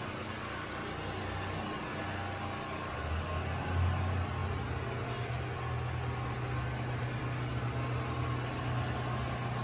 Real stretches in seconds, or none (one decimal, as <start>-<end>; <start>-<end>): 0.0-9.6